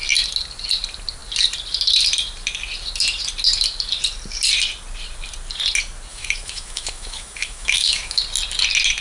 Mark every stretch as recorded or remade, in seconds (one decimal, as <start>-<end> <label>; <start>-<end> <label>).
0.0-6.1 recorded; 6.1-8.2 remade; 8.2-9.0 recorded